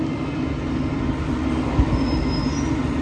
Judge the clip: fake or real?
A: real